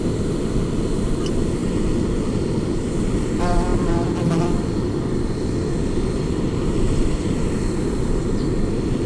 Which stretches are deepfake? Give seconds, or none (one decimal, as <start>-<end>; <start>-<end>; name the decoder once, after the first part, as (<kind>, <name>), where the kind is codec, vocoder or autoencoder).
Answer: none